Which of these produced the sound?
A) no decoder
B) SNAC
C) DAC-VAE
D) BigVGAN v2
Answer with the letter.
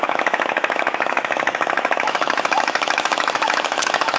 C